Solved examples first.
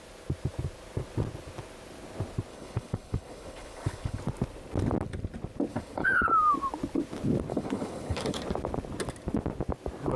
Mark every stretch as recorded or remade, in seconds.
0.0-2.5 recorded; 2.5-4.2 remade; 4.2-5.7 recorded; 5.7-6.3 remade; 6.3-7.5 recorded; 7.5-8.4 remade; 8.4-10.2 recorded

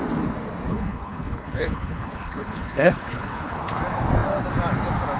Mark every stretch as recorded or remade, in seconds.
0.0-0.7 recorded; 0.7-3.8 remade; 3.8-5.2 recorded

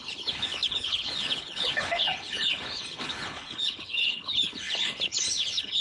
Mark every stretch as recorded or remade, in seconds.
0.0-5.8 remade

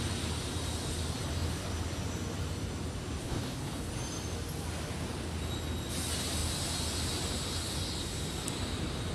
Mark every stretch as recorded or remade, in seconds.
0.0-3.2 recorded; 3.2-3.9 remade; 3.9-9.1 recorded

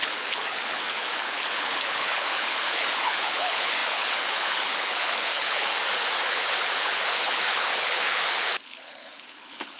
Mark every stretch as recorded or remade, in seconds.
0.0-5.8 remade; 5.8-6.3 recorded; 6.3-9.8 remade

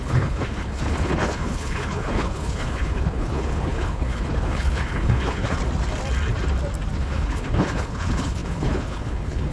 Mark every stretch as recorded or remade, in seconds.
0.0-5.6 remade; 5.6-7.0 recorded; 7.0-9.5 remade

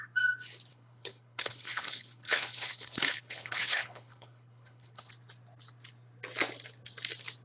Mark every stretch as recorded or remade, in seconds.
0.0-0.7 recorded; 0.7-5.1 remade; 5.1-7.4 recorded